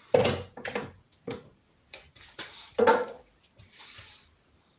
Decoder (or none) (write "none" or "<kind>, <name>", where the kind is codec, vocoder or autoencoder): none